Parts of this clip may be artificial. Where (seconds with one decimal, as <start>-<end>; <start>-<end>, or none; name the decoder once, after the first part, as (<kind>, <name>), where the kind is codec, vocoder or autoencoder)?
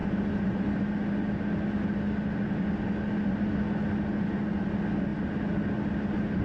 none